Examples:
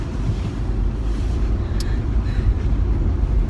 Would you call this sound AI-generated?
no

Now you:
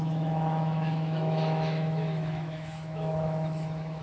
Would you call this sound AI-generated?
yes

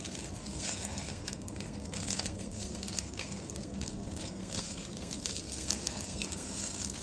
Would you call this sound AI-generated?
yes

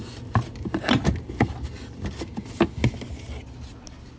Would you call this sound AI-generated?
no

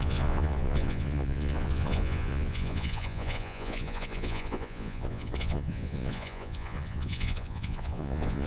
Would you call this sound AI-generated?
yes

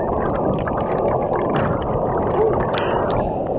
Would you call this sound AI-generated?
no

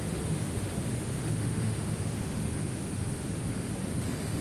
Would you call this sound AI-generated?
yes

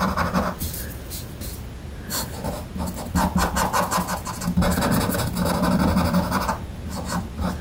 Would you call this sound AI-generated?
no